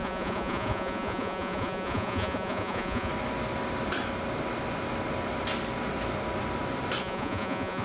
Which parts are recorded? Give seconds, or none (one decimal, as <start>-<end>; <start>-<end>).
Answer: 3.1-7.0

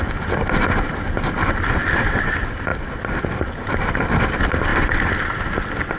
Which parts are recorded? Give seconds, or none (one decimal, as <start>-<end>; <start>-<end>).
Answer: 0.0-6.0